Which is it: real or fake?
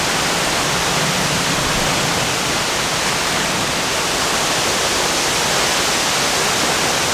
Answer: real